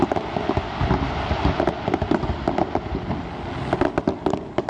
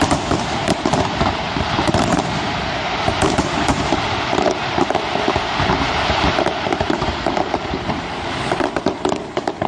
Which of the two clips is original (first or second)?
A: first